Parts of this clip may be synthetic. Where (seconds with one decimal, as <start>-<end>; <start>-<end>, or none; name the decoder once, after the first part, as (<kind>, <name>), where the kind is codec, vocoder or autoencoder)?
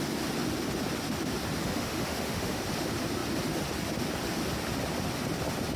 1.6-2.6 (autoencoder, DAC-VAE)